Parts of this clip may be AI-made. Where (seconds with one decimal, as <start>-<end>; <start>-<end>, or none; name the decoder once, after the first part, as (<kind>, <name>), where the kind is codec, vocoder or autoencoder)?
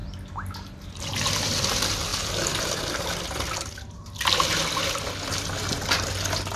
none